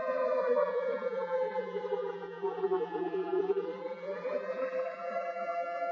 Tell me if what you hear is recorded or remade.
remade